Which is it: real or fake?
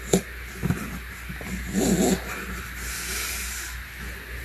real